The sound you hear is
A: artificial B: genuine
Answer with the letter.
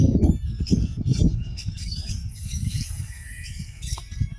A